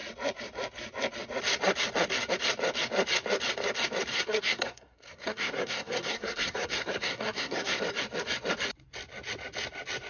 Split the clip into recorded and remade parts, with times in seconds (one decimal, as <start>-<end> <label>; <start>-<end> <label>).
0.0-4.1 recorded; 4.1-7.8 remade; 7.8-10.1 recorded